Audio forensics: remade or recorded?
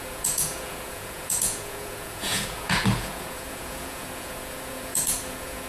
remade